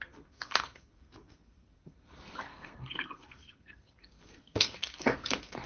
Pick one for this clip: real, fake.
fake